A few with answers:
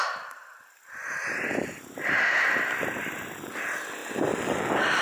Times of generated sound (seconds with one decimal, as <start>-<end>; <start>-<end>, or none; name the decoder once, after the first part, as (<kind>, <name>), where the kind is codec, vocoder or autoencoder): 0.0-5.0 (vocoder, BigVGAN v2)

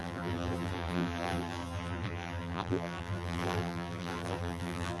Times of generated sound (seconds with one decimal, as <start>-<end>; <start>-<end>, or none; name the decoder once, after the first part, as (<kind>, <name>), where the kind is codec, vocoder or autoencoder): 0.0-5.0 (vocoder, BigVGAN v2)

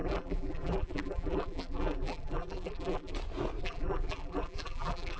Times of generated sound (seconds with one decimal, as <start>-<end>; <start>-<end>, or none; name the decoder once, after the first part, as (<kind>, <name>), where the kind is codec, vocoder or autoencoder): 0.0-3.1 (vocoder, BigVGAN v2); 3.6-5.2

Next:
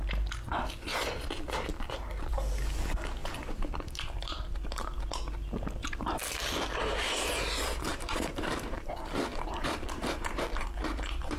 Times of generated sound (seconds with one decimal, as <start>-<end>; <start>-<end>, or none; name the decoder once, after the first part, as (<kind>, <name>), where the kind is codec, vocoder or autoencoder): 1.7-2.3 (vocoder, BigVGAN v2); 3.2-5.0; 7.9-11.4

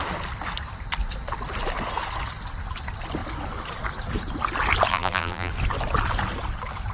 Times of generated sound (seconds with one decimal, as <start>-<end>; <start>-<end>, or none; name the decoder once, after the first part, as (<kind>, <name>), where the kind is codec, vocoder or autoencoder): 4.9-5.5 (vocoder, BigVGAN v2)

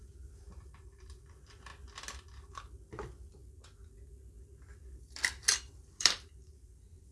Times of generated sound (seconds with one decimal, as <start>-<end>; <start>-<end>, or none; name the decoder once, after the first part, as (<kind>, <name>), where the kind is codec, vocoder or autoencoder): 0.0-1.7 (vocoder, BigVGAN v2); 2.4-3.4; 5.5-7.1